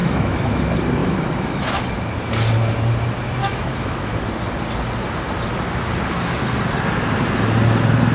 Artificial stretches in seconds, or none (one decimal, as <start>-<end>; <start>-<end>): 0.0-0.6; 1.0-1.8; 3.4-4.1

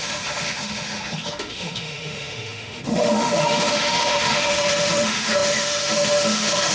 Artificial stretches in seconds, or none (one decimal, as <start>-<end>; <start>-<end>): 0.0-6.7

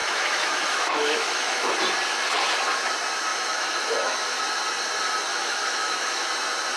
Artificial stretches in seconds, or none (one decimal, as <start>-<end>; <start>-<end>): 0.0-1.7; 3.3-4.4; 5.3-6.3

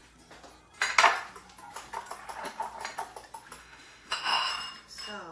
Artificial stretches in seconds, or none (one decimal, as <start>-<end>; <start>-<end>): 3.6-4.5

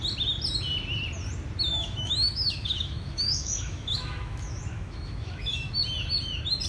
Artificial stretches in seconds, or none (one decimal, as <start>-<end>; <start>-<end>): 1.7-5.7

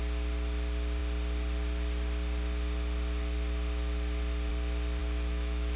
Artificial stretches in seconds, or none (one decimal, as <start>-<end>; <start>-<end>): 5.0-5.8

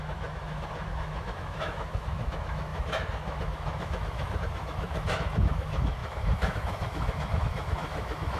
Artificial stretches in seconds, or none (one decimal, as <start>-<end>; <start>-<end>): 0.0-8.4